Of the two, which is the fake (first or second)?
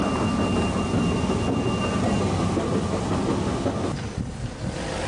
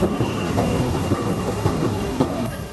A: second